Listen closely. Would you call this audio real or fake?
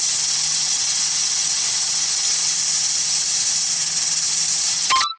real